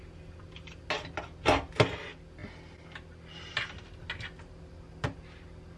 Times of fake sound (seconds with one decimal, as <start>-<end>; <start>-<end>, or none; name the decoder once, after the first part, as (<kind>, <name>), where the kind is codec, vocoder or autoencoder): none

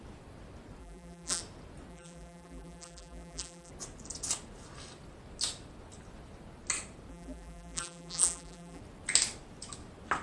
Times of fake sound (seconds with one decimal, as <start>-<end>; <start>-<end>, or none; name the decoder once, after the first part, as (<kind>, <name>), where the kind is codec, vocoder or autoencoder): 0.8-1.4 (vocoder, BigVGAN v2); 1.9-3.7; 7.1-8.8